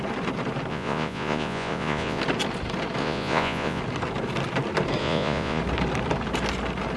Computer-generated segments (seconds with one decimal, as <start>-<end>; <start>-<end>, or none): 0.7-2.2; 3.0-3.8; 5.0-5.6